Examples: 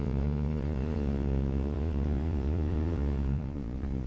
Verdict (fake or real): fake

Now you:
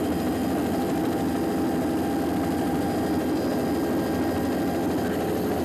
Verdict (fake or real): real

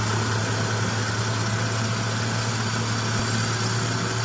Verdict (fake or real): real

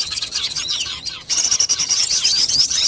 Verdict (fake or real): fake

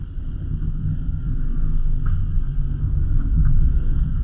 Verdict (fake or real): fake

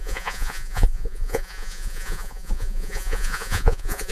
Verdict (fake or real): fake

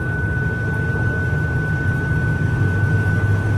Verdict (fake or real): real